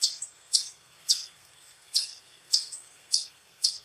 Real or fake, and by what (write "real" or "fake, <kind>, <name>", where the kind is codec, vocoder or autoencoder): fake, codec, SNAC